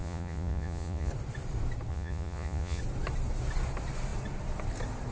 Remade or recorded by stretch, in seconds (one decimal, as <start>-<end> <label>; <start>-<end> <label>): 0.0-1.1 remade; 1.1-1.9 recorded; 1.9-2.8 remade; 2.8-5.1 recorded